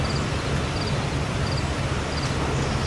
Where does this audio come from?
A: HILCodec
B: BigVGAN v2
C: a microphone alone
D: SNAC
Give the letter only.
C